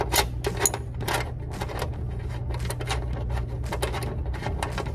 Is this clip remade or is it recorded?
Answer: recorded